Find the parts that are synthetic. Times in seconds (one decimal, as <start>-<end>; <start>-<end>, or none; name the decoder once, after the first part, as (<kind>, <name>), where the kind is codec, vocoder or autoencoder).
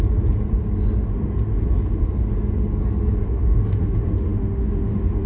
1.1-1.6 (autoencoder, DAC-VAE); 3.2-5.3